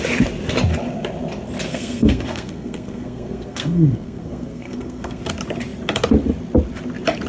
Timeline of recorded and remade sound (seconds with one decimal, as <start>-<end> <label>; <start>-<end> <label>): 0.0-1.7 recorded; 1.7-5.2 remade; 5.2-7.3 recorded